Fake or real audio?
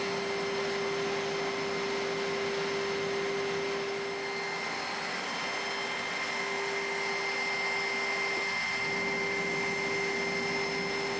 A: real